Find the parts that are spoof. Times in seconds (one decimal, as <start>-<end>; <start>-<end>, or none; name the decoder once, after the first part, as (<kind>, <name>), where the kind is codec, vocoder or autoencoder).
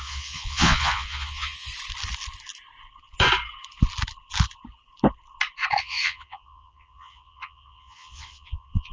0.0-1.7 (vocoder, Vocos); 5.8-8.9